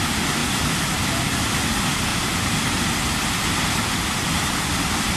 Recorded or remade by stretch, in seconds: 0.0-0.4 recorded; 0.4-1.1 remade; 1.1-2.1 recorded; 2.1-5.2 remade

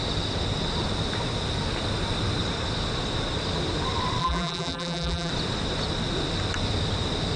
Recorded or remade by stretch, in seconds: 0.0-4.2 recorded; 4.2-5.3 remade; 5.3-7.4 recorded

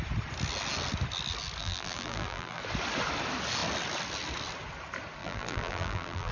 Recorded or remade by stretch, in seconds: 0.0-1.6 recorded; 1.6-2.6 remade; 2.6-5.2 recorded; 5.2-6.3 remade

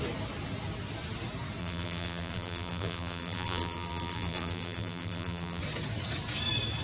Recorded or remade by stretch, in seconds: 0.0-1.6 recorded; 1.6-5.6 remade; 5.6-6.8 recorded

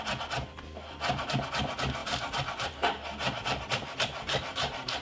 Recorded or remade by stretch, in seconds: 0.0-2.0 recorded; 2.0-5.0 remade